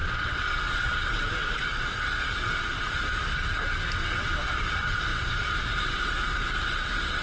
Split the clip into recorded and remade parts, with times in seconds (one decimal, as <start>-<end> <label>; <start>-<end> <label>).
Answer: 0.0-2.6 remade; 2.6-4.0 recorded; 4.0-7.2 remade